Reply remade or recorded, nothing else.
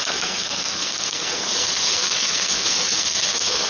remade